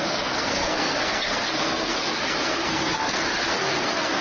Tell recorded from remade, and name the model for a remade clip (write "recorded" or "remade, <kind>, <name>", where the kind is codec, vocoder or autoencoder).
remade, codec, SNAC